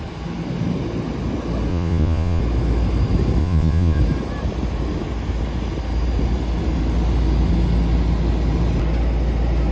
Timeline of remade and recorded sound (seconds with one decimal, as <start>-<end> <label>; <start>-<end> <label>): 0.0-1.7 recorded; 1.7-2.4 remade; 2.4-3.4 recorded; 3.4-4.0 remade; 4.0-9.7 recorded